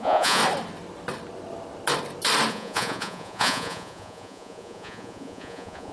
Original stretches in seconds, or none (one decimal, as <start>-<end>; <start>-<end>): 0.4-2.5